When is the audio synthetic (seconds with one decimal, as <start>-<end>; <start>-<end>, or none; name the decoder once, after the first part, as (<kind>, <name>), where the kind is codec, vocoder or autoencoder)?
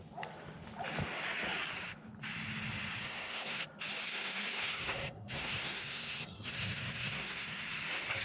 3.0-3.6 (codec, SNAC); 4.0-7.6